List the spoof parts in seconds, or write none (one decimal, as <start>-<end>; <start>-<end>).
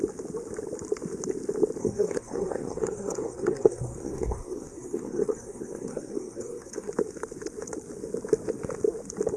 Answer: 1.8-6.9